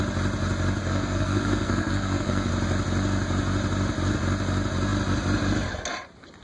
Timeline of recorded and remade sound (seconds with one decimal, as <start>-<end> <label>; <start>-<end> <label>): 0.0-0.8 recorded; 0.8-2.5 remade; 2.5-6.4 recorded

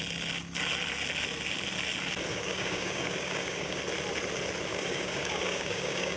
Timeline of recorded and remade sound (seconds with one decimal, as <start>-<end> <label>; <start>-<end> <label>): 0.0-2.3 recorded; 2.3-3.8 remade; 3.8-4.7 recorded; 4.7-6.2 remade

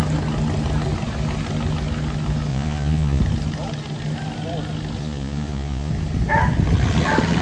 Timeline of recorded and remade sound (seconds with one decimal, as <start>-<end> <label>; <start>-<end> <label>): 0.0-2.5 recorded; 2.5-3.2 remade; 3.2-5.0 recorded; 5.0-5.9 remade; 5.9-7.4 recorded